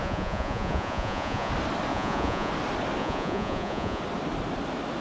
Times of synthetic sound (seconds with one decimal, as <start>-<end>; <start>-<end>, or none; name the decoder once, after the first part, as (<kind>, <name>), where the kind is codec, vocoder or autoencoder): 0.0-1.5 (vocoder, Vocos); 1.9-2.5; 3.0-4.0